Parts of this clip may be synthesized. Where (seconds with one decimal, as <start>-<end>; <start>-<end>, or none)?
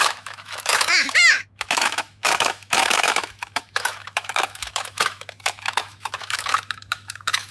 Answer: 0.0-7.5